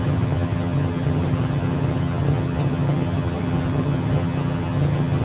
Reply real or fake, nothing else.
fake